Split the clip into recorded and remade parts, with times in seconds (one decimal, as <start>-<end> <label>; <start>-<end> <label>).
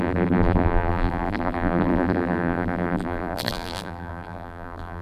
0.0-5.0 remade